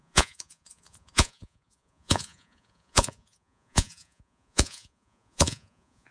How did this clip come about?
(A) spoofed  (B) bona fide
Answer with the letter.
A